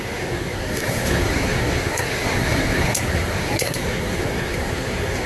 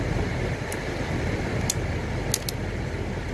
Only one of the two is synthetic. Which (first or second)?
first